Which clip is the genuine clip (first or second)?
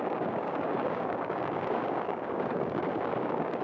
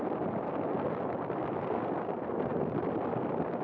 second